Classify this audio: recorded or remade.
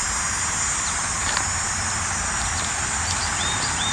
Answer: recorded